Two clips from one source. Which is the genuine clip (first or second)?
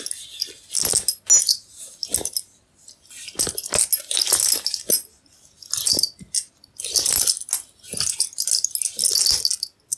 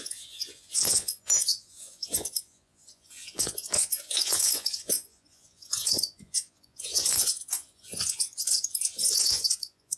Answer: first